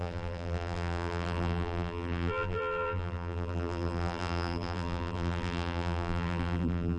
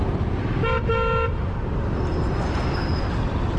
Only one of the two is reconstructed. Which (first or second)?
first